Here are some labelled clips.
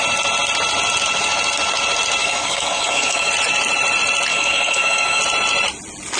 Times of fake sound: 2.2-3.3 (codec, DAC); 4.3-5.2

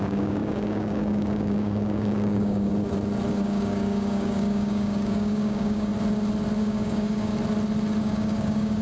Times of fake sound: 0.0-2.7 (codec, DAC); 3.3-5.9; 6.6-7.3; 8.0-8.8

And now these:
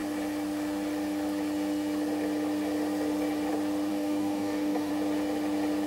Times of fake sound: 3.9-4.9 (codec, DAC)